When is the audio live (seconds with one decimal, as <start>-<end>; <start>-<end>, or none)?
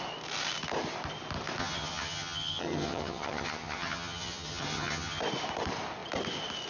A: 0.0-1.6; 5.2-6.7